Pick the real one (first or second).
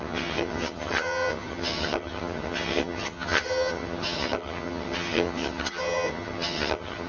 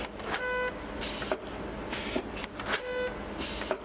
second